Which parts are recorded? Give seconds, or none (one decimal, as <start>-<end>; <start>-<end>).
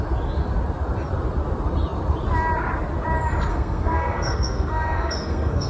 0.0-3.5